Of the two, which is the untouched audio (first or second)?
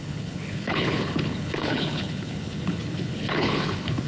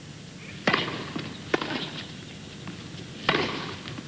second